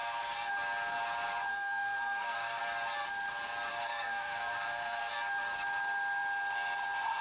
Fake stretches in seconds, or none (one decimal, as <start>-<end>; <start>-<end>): 0.0-0.5; 1.5-2.6; 3.7-5.1